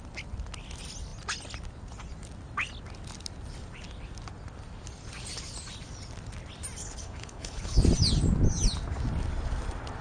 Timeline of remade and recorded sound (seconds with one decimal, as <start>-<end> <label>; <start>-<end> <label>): 0.0-6.8 recorded; 6.8-7.8 remade; 7.8-10.0 recorded